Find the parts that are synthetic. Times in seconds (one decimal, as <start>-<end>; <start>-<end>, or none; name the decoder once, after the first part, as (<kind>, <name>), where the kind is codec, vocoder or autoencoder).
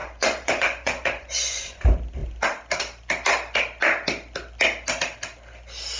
0.0-1.8 (vocoder, Vocos)